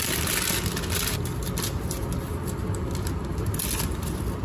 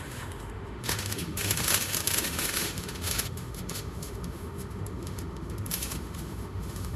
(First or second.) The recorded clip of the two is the first